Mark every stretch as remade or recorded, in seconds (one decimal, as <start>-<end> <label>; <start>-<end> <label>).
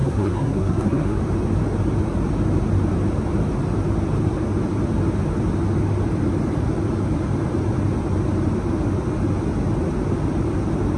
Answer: 0.0-1.2 remade; 1.2-11.0 recorded